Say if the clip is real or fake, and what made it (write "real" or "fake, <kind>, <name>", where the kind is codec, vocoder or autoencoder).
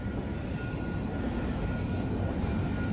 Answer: real